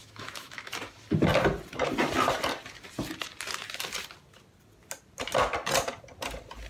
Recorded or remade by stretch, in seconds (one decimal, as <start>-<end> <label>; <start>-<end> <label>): 0.0-0.7 remade; 0.7-6.7 recorded